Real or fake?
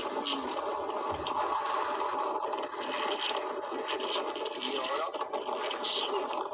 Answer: real